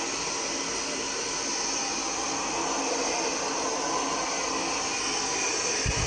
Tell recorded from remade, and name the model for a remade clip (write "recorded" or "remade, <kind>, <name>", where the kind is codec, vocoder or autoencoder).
recorded